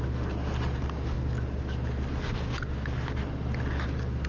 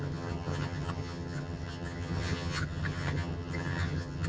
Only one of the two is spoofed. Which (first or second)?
second